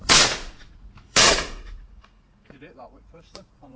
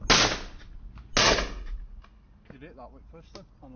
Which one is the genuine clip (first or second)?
second